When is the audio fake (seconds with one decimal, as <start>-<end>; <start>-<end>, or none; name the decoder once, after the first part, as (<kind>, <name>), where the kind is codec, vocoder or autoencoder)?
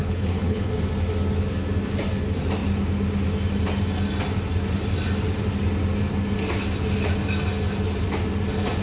0.0-0.7 (codec, HILCodec)